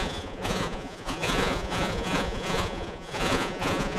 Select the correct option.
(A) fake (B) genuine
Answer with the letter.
A